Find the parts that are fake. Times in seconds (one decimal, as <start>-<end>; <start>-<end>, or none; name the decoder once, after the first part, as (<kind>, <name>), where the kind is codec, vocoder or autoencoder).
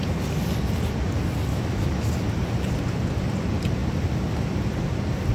1.5-2.1 (autoencoder, DAC-VAE)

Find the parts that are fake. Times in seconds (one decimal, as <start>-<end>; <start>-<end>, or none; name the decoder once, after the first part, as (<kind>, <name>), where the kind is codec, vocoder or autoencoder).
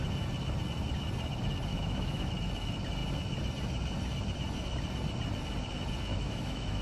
1.7-2.3 (autoencoder, DAC-VAE); 6.1-6.8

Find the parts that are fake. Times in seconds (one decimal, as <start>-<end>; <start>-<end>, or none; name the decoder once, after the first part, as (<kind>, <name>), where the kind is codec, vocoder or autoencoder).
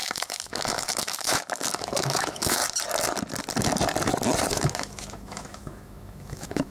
0.0-2.6 (autoencoder, DAC-VAE); 4.5-6.7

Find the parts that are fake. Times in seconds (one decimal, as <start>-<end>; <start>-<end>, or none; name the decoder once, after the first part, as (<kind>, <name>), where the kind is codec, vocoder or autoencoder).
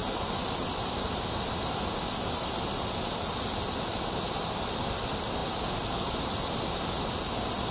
none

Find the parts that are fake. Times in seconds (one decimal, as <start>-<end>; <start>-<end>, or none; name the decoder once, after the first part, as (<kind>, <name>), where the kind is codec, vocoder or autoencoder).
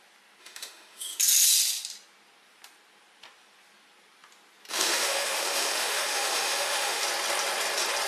0.4-1.2 (autoencoder, DAC-VAE); 4.7-7.0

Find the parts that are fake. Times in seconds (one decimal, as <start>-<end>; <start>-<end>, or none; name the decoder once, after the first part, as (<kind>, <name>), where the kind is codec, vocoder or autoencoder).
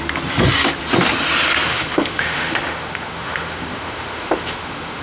1.7-5.0 (autoencoder, DAC-VAE)